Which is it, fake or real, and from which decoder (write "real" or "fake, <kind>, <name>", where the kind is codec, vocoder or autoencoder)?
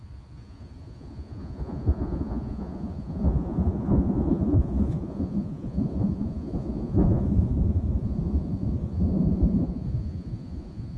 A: fake, vocoder, Vocos